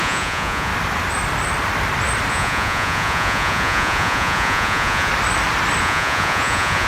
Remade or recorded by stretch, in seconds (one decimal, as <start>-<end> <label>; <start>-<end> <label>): 0.0-0.7 remade; 0.7-2.3 recorded; 2.3-5.1 remade; 5.1-5.8 recorded; 5.8-6.9 remade

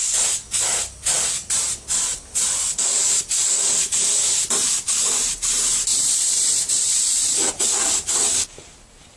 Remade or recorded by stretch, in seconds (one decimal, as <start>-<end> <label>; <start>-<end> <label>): 0.0-5.9 recorded; 5.9-6.7 remade; 6.7-9.2 recorded

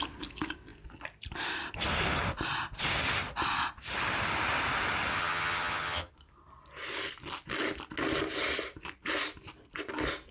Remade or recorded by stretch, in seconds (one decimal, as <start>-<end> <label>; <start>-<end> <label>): 0.0-5.1 recorded; 5.1-6.1 remade; 6.1-10.3 recorded

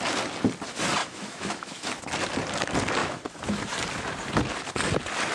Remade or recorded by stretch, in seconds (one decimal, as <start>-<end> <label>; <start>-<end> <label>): 0.0-1.0 recorded; 1.0-2.0 remade; 2.0-3.0 recorded; 3.0-3.6 remade; 3.6-5.3 recorded